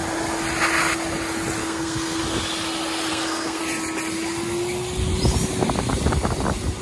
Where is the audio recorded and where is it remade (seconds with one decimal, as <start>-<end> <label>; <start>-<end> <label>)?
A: 0.0-1.6 recorded; 1.6-2.2 remade; 2.2-3.1 recorded; 3.1-3.6 remade; 3.6-6.8 recorded